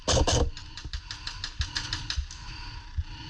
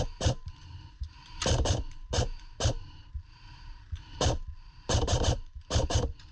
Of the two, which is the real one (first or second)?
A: first